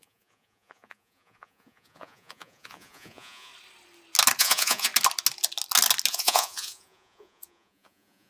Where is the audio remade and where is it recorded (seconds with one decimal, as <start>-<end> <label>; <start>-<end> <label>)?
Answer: 0.0-3.5 remade; 3.5-4.4 recorded; 4.4-4.9 remade; 4.9-6.1 recorded; 6.1-8.3 remade